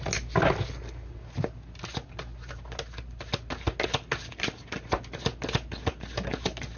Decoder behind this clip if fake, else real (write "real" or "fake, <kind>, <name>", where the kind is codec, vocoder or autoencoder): real